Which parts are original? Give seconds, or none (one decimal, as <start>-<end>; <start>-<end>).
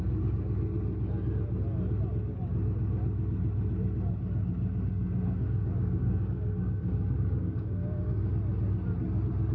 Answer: 0.0-4.9; 8.3-9.5